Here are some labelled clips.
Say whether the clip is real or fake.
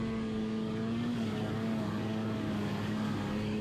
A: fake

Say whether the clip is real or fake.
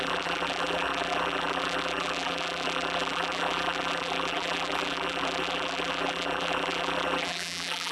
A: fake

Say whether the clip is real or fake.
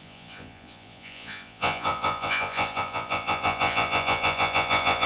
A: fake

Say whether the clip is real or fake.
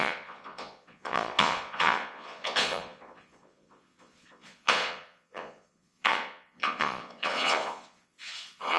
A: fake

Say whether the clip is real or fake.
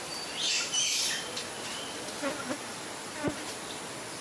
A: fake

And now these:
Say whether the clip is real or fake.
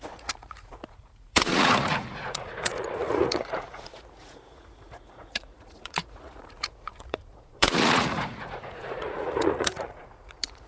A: fake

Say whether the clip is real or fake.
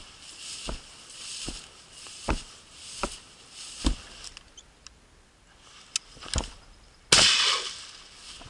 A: real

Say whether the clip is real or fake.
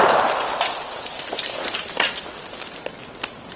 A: real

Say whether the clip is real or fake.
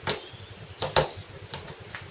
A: fake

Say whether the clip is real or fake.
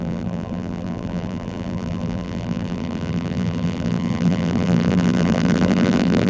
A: fake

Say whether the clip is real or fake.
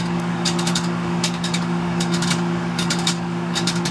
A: fake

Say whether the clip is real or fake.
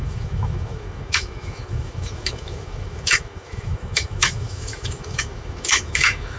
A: fake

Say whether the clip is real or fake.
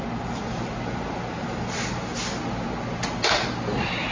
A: real